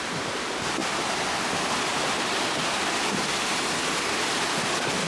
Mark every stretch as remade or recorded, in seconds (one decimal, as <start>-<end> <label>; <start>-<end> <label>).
0.0-5.1 recorded